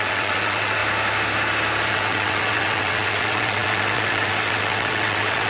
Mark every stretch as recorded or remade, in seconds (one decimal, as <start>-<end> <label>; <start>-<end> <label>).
0.0-0.8 remade; 0.8-1.9 recorded; 1.9-5.5 remade